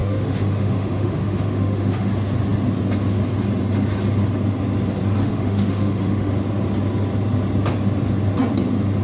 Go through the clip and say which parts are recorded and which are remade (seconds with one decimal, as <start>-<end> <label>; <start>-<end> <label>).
0.0-2.1 remade; 2.1-5.2 recorded; 5.2-6.3 remade; 6.3-9.0 recorded